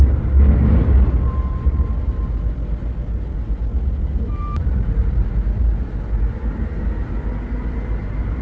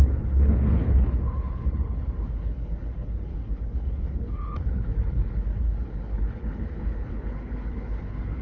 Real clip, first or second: first